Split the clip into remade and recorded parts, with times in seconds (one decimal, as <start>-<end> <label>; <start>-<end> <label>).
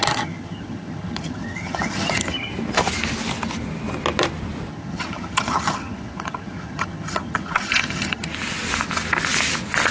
0.0-2.5 remade; 2.5-4.7 recorded; 4.7-8.3 remade; 8.3-9.9 recorded